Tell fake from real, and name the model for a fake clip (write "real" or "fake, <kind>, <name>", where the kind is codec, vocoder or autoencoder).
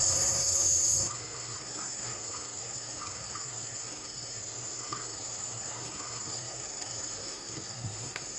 fake, codec, SNAC